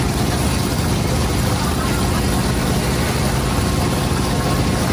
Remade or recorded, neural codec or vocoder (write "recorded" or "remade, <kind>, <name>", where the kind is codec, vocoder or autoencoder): recorded